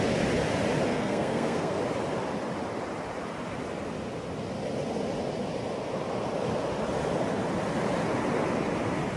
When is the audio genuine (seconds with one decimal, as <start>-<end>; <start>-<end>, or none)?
0.0-0.9; 1.8-9.2